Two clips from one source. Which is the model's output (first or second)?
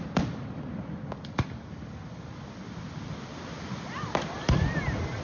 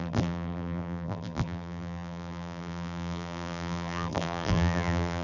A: second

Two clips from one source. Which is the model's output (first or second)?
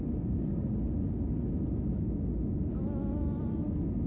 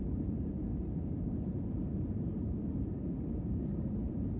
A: second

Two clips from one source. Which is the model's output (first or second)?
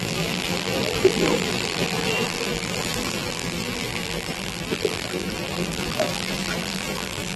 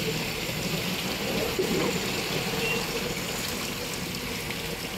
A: first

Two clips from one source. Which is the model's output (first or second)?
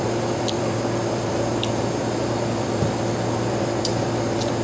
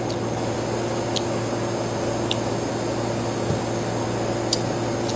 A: first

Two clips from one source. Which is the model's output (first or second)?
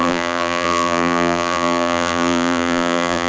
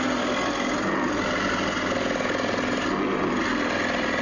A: first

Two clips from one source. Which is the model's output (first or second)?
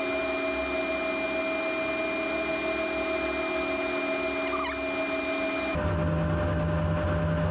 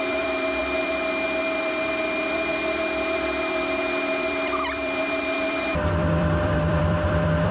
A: second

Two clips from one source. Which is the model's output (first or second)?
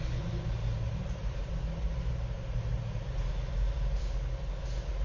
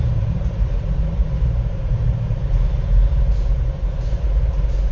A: second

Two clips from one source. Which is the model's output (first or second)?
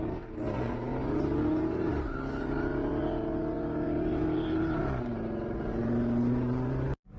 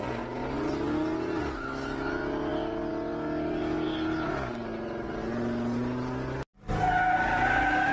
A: first